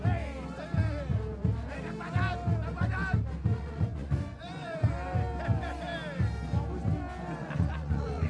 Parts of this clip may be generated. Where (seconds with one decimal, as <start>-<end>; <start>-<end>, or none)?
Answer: 3.5-4.9; 7.4-8.3